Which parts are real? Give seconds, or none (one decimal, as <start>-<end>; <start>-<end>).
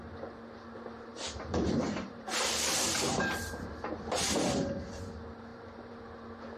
0.0-1.1; 3.7-5.5; 6.0-6.6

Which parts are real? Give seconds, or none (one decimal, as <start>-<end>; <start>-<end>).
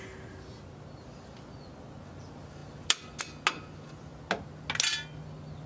0.0-5.7